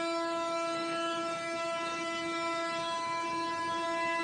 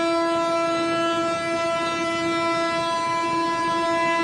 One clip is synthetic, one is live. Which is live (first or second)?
second